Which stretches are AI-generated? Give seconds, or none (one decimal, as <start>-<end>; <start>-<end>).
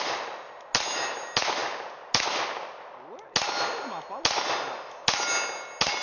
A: none